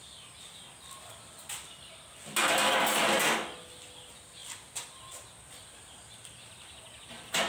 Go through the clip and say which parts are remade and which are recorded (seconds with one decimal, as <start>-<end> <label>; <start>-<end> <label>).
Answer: 0.0-7.5 recorded